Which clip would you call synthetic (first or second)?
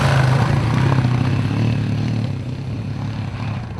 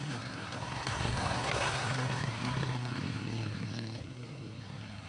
second